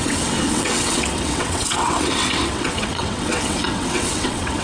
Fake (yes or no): yes